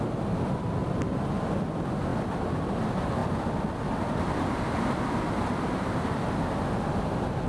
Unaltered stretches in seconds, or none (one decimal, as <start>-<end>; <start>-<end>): 0.0-7.5